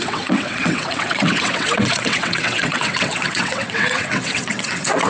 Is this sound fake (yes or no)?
yes